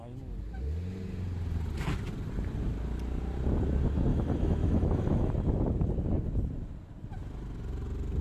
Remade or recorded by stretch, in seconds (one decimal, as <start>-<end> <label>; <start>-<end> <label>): 0.0-4.1 recorded; 4.1-5.3 remade; 5.3-8.2 recorded